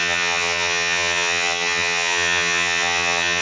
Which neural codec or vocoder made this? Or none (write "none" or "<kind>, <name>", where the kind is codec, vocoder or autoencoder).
vocoder, HiFi-GAN